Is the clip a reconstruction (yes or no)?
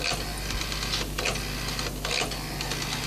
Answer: no